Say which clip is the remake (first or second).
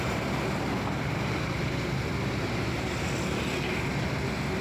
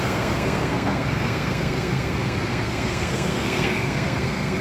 second